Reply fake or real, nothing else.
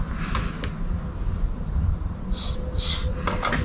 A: real